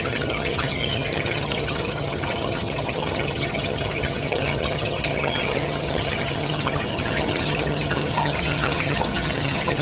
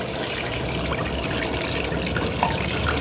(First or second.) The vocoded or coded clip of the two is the first